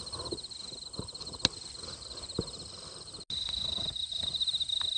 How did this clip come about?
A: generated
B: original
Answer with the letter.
B